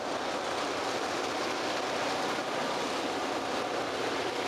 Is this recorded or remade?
recorded